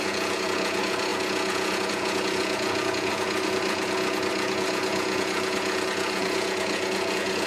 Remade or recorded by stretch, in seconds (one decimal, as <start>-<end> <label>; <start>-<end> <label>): 0.0-7.5 remade